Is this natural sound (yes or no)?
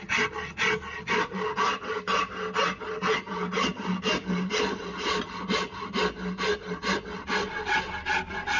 yes